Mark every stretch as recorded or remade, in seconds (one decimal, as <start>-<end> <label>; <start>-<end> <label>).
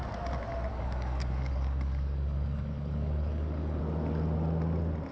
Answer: 0.0-0.7 recorded; 0.7-3.8 remade; 3.8-5.1 recorded